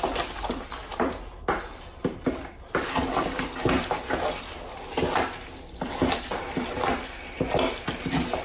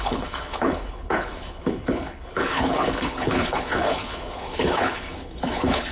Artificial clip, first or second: second